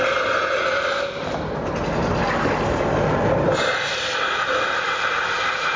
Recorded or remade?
recorded